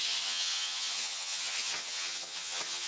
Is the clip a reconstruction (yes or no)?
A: yes